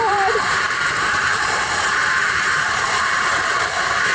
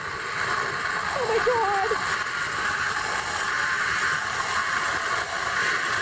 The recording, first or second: second